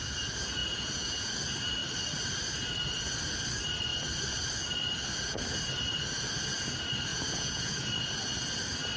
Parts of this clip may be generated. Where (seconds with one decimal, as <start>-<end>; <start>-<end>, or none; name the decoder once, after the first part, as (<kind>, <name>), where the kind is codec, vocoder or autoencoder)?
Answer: 0.6-1.3 (vocoder, Vocos); 7.1-7.9